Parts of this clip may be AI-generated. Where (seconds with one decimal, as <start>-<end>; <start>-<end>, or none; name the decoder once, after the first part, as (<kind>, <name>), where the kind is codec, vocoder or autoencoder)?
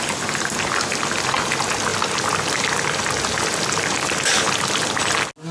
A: none